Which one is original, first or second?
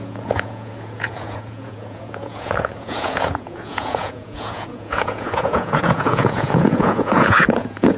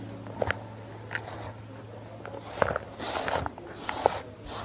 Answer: second